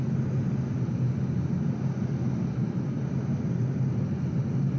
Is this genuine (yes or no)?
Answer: yes